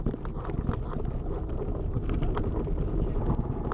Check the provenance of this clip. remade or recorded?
recorded